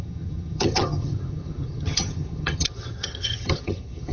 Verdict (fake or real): fake